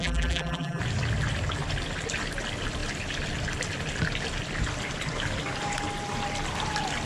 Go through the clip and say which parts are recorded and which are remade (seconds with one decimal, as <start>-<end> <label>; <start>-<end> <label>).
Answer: 0.0-0.8 remade; 0.8-7.1 recorded

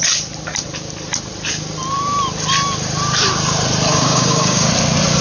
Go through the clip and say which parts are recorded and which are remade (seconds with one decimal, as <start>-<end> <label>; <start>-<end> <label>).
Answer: 0.0-3.9 recorded; 3.9-4.7 remade; 4.7-5.2 recorded

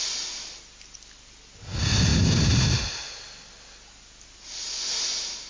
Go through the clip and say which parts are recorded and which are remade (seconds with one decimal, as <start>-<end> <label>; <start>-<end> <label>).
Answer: 0.0-5.5 recorded

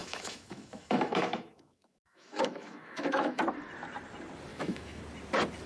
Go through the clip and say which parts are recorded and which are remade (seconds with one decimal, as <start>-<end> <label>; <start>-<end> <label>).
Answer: 0.0-3.4 remade; 3.4-4.5 recorded; 4.5-5.0 remade; 5.0-5.7 recorded

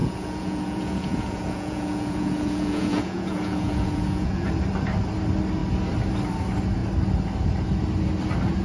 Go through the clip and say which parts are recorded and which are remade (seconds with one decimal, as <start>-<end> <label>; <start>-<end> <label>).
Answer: 0.0-4.5 remade; 4.5-8.6 recorded